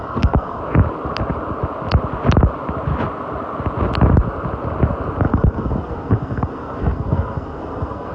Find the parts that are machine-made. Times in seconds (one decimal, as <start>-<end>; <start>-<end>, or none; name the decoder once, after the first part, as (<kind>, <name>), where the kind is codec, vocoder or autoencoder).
0.0-0.6 (codec, SNAC); 5.2-8.1